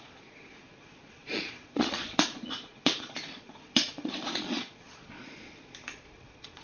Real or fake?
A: fake